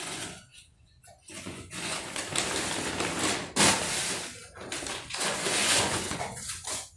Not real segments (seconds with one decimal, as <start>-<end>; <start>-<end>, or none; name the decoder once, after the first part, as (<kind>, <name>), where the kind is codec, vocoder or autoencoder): 0.0-2.2 (vocoder, Vocos); 4.9-7.0